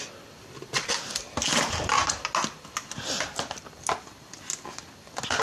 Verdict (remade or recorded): recorded